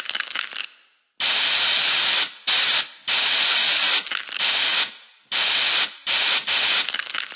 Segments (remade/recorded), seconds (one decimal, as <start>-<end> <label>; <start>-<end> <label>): 0.0-7.4 recorded